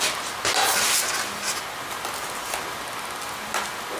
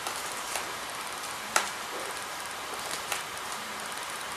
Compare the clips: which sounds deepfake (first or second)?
second